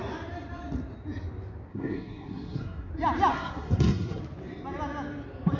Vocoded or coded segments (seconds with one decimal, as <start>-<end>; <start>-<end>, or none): 1.7-2.9; 3.3-4.2